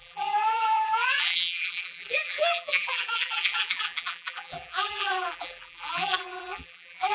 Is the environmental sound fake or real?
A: fake